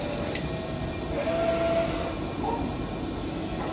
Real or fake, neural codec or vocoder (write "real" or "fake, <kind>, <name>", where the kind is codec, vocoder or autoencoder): real